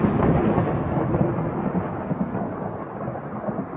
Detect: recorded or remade recorded